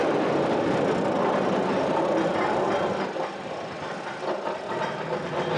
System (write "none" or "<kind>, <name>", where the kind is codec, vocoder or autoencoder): none